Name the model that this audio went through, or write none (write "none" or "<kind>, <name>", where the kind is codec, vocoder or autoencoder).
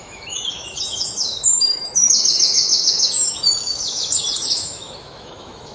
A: autoencoder, DAC-VAE